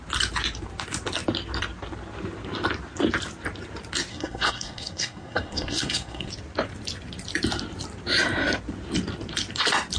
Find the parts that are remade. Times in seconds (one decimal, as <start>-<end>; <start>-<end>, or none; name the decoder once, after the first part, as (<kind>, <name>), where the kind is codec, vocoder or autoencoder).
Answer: 4.1-6.3 (codec, SNAC)